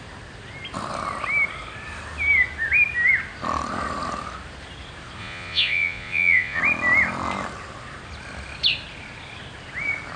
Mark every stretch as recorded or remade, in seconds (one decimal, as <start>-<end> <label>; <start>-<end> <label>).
0.0-5.2 recorded; 5.2-6.6 remade; 6.6-10.2 recorded